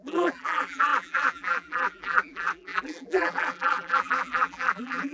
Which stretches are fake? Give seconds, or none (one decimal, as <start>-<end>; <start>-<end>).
0.0-5.1